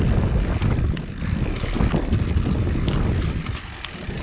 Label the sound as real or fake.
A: real